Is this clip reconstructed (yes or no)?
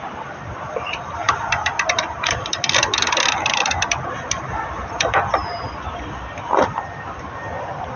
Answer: yes